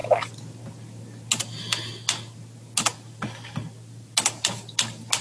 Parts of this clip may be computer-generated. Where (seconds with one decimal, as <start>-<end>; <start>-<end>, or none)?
2.9-4.1